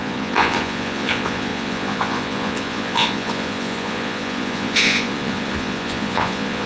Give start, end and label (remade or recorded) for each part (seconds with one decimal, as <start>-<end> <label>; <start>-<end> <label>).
0.0-6.7 remade